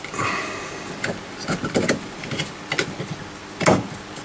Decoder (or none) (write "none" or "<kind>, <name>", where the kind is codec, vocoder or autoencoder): none